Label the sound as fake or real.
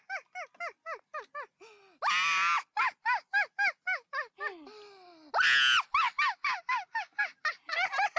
real